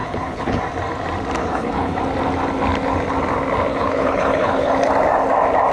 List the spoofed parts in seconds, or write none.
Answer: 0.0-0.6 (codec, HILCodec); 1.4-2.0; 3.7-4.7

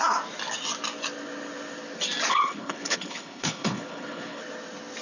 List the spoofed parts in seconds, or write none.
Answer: 2.3-4.4 (codec, HILCodec)

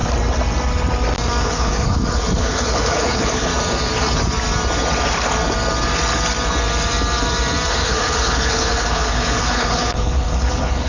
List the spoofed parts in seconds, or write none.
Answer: 1.4-3.5 (codec, HILCodec); 7.7-10.9

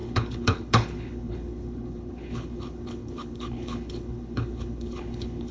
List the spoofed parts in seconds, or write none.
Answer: 0.0-5.5 (codec, HILCodec)

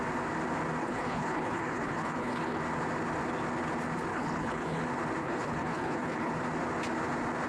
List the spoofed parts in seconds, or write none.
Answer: 0.8-2.6 (codec, HILCodec); 4.1-4.8; 5.2-6.3

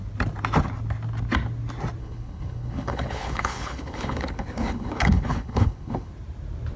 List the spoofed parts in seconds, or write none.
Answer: 2.0-6.1 (codec, HILCodec)

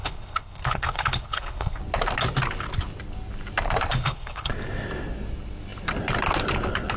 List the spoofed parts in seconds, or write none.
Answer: 0.0-1.8 (codec, HILCodec); 4.0-4.5